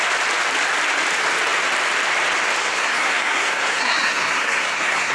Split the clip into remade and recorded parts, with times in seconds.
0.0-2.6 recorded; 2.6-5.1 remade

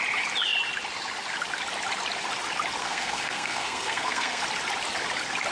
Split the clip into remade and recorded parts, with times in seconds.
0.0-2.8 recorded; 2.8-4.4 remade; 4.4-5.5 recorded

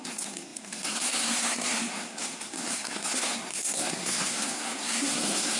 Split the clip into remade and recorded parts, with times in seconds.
0.0-5.6 remade

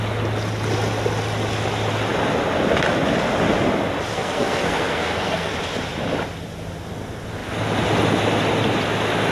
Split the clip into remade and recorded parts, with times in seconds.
0.0-4.1 recorded; 4.1-5.5 remade; 5.5-9.3 recorded

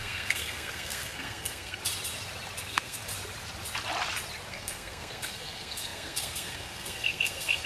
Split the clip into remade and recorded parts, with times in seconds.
0.0-1.8 remade; 1.8-2.6 recorded; 2.6-3.1 remade; 3.1-4.5 recorded; 4.5-7.7 remade